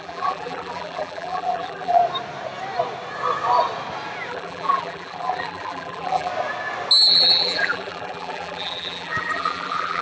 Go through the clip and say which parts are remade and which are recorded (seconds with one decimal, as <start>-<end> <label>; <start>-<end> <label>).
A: 0.0-2.0 remade; 2.0-4.3 recorded; 4.3-6.3 remade; 6.3-7.0 recorded; 7.0-10.0 remade